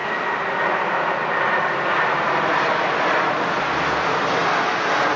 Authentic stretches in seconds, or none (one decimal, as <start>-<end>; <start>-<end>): 0.0-5.2